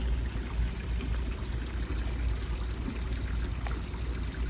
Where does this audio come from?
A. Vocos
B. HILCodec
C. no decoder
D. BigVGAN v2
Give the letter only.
C